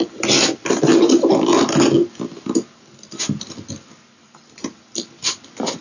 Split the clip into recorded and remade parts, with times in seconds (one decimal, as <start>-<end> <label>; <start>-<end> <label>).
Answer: 0.0-5.8 recorded